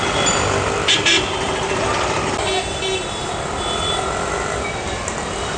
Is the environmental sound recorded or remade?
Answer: recorded